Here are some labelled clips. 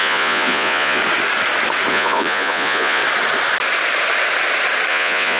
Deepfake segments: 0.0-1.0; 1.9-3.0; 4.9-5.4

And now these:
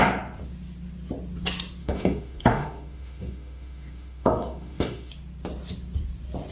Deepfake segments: 1.8-5.1

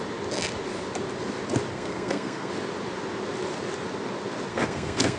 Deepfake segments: 1.7-2.5; 4.5-5.2

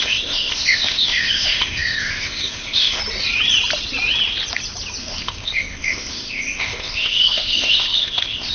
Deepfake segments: 0.0-3.0; 5.0-8.5